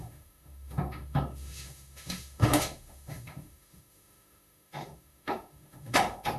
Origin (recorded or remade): remade